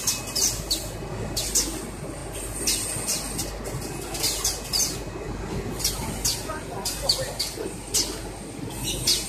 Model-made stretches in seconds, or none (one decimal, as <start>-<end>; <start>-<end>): none